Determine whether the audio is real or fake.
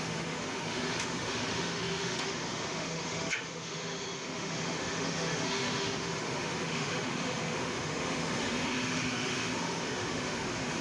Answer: fake